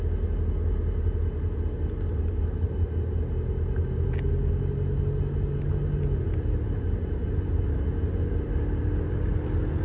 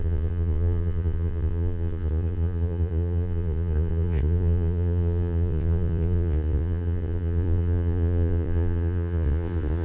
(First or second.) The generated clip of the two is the second